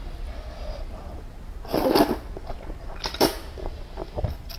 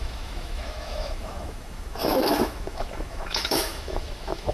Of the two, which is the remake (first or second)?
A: second